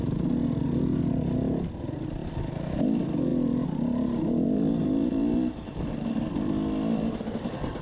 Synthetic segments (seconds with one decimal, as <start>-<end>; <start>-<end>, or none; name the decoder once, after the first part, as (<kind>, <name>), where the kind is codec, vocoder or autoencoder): none